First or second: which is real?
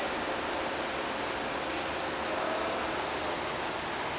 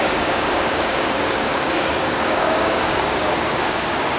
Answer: first